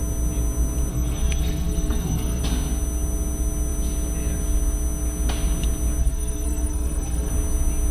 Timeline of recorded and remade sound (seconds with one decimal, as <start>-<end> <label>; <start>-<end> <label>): 0.0-0.9 recorded; 0.9-2.4 remade; 2.4-6.0 recorded; 6.0-7.3 remade; 7.3-7.9 recorded